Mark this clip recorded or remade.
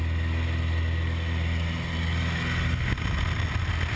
recorded